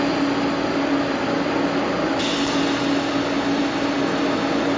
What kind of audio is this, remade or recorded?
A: recorded